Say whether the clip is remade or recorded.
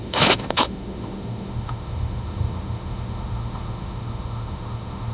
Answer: remade